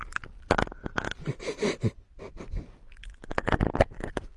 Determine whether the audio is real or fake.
real